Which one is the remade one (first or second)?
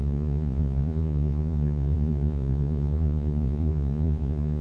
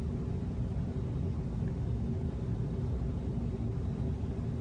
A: first